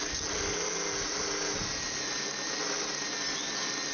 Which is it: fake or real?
real